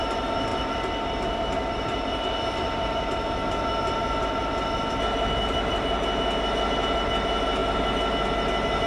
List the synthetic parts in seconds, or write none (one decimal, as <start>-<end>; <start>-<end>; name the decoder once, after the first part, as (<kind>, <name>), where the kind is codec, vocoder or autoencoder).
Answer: none

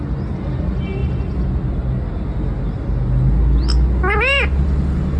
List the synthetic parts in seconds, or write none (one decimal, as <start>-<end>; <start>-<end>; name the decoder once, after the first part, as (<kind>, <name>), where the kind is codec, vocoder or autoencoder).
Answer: none